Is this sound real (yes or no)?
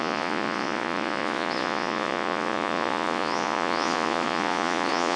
no